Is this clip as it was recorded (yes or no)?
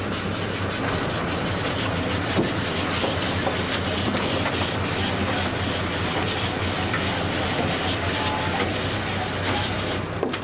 yes